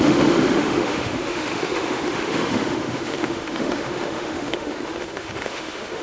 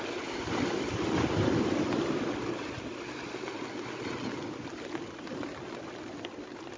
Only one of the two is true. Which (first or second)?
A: second